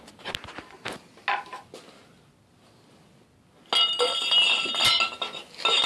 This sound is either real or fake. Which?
real